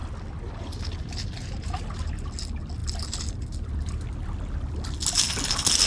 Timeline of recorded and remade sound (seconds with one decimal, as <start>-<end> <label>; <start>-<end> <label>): 0.0-5.9 recorded